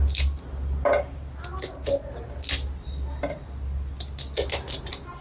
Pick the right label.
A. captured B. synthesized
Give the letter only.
A